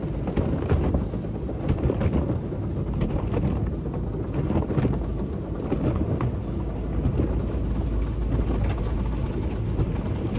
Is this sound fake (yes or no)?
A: no